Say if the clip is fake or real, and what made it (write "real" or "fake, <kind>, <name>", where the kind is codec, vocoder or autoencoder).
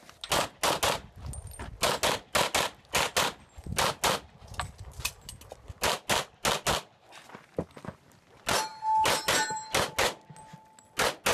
real